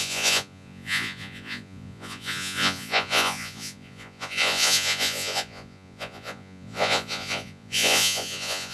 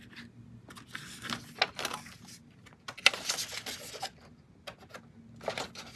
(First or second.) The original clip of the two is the second